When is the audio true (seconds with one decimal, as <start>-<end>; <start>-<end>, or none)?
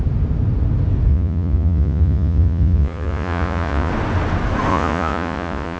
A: 0.0-1.1; 3.9-4.7